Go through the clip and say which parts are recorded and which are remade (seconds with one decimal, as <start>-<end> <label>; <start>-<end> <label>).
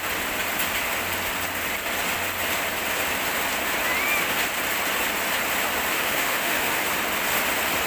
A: 0.0-5.9 recorded; 5.9-6.8 remade; 6.8-7.9 recorded